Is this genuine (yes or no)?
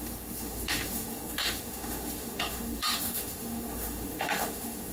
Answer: no